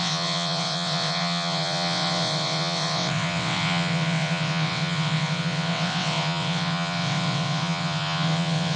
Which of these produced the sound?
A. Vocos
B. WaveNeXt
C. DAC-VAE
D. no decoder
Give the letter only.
B